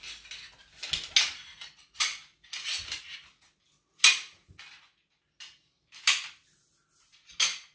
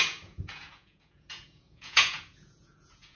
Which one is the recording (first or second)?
first